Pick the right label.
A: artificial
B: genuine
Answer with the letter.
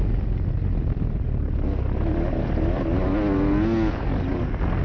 B